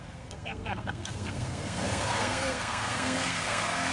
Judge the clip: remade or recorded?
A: remade